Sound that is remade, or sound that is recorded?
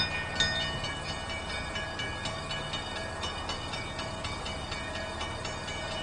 recorded